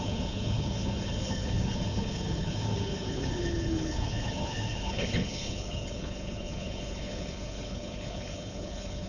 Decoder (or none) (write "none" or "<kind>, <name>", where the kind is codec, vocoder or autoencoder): codec, HILCodec